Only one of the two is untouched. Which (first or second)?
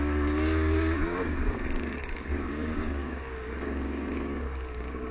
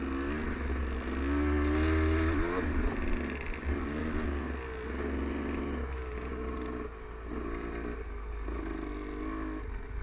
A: second